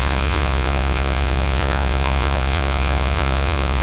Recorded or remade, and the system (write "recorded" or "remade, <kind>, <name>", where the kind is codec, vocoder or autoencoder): remade, vocoder, Vocos